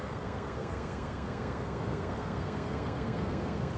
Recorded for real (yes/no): no